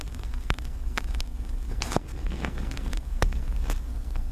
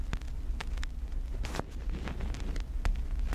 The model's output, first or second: first